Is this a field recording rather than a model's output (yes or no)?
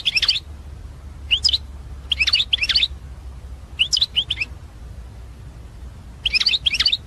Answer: yes